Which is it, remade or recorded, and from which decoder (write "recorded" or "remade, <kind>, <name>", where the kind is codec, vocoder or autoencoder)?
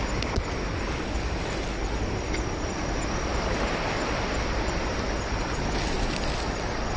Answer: recorded